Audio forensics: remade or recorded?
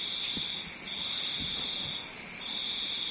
recorded